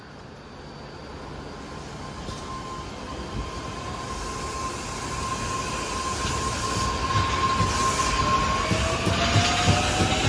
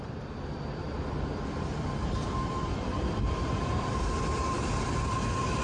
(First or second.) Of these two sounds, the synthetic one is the second